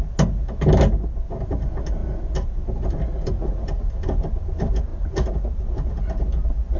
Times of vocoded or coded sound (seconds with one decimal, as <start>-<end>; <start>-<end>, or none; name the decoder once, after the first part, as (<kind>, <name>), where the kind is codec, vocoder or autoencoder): none